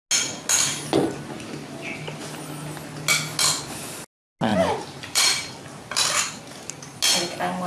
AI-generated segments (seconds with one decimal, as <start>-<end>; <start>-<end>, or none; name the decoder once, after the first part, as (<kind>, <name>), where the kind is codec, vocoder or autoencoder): 4.5-6.4 (vocoder, BigVGAN v2)